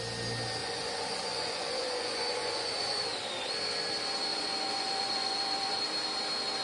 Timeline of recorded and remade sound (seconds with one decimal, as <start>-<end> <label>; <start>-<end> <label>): 0.0-0.6 recorded; 0.6-3.0 remade; 3.0-4.3 recorded; 4.3-5.8 remade; 5.8-6.6 recorded

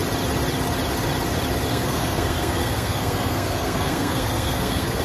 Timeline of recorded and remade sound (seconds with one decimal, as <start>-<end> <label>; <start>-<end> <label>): 0.0-1.7 recorded; 1.7-5.0 remade

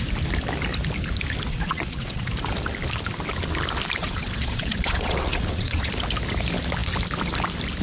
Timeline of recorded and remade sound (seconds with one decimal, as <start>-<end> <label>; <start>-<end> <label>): 0.0-1.5 recorded; 1.5-2.3 remade; 2.3-4.0 recorded; 4.0-5.9 remade; 5.9-7.8 recorded

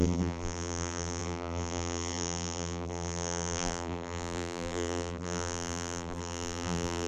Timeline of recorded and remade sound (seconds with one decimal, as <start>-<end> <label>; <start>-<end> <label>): 0.0-7.1 remade

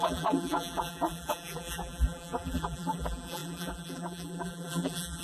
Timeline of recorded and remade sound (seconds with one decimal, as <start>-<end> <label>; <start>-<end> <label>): 0.0-5.2 remade

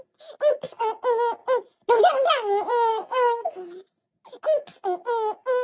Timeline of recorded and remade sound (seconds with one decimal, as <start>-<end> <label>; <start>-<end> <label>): 0.0-2.9 recorded; 2.9-3.5 remade; 3.5-5.6 recorded